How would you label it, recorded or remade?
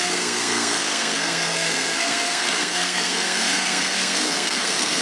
remade